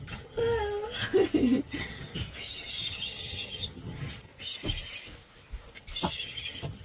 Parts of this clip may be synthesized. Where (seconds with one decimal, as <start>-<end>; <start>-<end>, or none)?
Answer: 0.0-0.4; 1.6-2.2; 2.9-4.3; 6.1-6.8

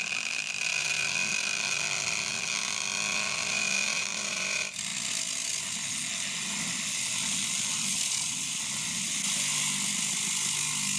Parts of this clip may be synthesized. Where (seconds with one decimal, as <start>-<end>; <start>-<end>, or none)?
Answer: none

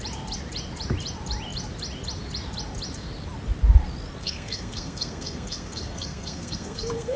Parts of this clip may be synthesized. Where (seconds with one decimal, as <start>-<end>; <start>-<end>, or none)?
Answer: 4.2-7.2